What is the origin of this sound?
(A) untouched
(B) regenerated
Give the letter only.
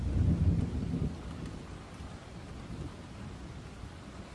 A